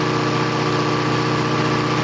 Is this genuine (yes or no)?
yes